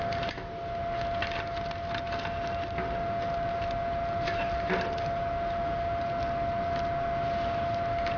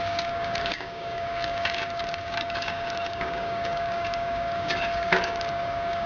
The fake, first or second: second